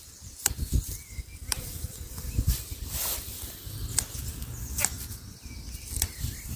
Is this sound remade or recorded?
recorded